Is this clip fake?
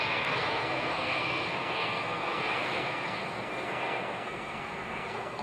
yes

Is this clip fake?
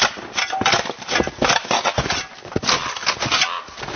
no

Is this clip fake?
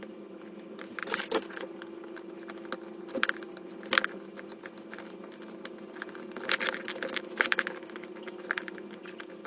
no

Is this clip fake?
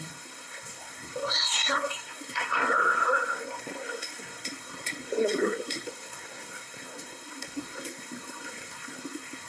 yes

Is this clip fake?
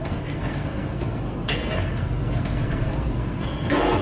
yes